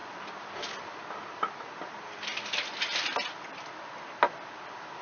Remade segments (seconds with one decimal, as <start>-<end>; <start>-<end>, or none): none